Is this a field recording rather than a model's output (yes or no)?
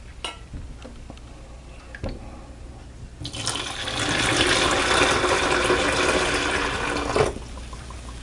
yes